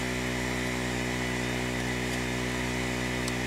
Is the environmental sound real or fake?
real